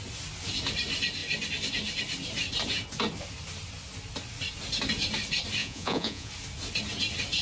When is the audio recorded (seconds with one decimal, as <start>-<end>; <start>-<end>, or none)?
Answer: 0.0-5.6; 6.3-7.4